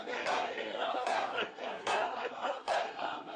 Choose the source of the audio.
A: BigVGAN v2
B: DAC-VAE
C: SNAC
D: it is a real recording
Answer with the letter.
C